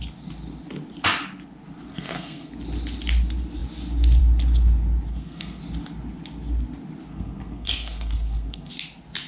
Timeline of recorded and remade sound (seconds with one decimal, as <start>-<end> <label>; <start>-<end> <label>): 0.0-1.9 recorded; 1.9-2.5 remade; 2.5-5.1 recorded; 5.1-5.6 remade; 5.6-7.1 recorded; 7.1-8.7 remade; 8.7-9.3 recorded